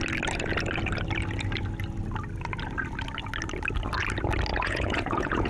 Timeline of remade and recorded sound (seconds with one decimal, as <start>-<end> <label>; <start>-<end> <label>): 0.0-4.5 recorded; 4.5-5.5 remade